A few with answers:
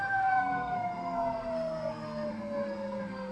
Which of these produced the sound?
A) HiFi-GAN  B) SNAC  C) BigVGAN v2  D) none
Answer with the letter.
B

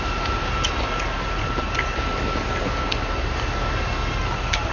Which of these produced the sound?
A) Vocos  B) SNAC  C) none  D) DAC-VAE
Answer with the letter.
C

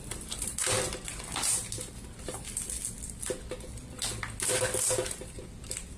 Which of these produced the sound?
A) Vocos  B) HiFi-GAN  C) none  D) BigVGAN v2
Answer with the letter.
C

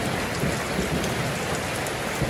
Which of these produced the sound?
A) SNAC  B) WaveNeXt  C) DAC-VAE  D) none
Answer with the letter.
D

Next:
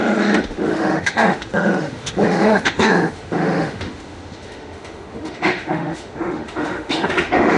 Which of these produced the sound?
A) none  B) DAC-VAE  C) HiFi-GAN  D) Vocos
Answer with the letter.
B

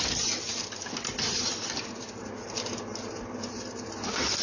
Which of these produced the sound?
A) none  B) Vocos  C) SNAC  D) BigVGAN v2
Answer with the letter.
A